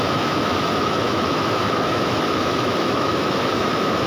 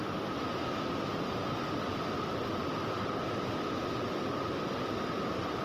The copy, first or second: first